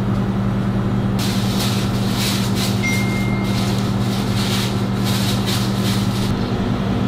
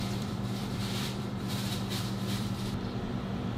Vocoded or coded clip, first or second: second